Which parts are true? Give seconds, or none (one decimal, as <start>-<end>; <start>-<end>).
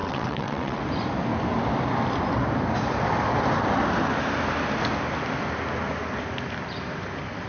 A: 0.8-7.5